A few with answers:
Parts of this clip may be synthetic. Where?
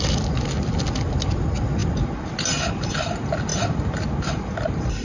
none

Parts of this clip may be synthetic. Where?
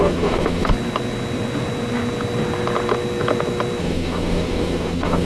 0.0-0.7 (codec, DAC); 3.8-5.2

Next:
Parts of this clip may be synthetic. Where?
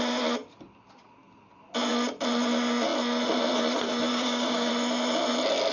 4.1-4.7 (codec, DAC)